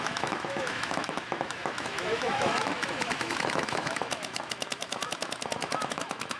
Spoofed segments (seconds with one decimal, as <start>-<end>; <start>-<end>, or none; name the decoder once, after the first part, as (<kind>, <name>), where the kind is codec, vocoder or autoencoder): 0.0-6.4 (autoencoder, DAC-VAE)

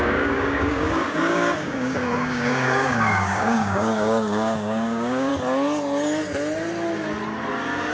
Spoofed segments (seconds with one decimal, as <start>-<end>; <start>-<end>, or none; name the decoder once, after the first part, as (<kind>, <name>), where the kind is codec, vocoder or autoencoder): 0.0-5.3 (codec, DAC)

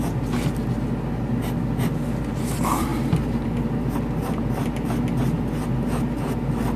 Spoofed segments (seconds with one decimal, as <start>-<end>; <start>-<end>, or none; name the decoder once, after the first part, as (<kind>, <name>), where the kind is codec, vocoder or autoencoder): none

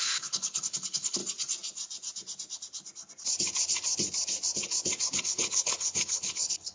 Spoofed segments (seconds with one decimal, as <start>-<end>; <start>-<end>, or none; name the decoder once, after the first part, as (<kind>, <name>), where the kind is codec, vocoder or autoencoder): 0.0-1.2 (codec, HILCodec); 5.2-6.7